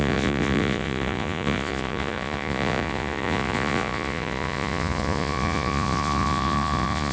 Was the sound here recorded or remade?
remade